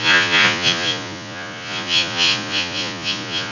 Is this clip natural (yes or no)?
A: no